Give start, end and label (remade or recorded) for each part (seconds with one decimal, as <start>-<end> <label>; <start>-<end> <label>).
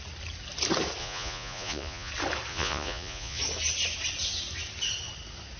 0.0-1.0 recorded; 1.0-2.1 remade; 2.1-2.5 recorded; 2.5-3.4 remade; 3.4-5.6 recorded